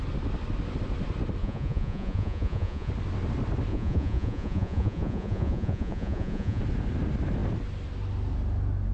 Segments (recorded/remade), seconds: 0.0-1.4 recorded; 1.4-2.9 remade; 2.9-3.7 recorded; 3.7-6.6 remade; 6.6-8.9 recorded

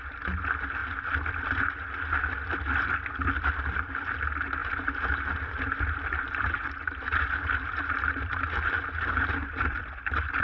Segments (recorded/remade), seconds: 0.0-4.6 recorded; 4.6-9.8 remade; 9.8-10.4 recorded

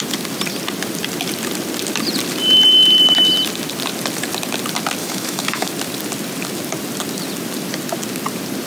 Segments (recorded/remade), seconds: 0.0-5.0 recorded; 5.0-5.7 remade; 5.7-8.7 recorded

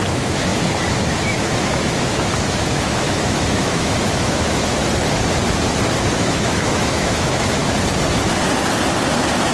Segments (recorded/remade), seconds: 0.0-0.5 remade; 0.5-1.3 recorded; 1.3-4.8 remade; 4.8-6.1 recorded; 6.1-7.6 remade; 7.6-9.5 recorded